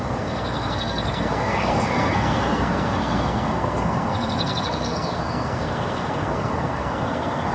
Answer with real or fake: fake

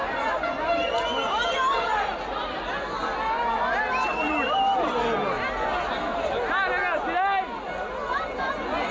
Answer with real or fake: real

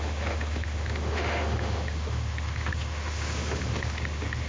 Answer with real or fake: fake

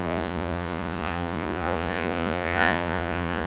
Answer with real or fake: fake